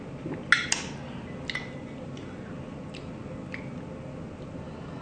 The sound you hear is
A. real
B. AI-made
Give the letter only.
A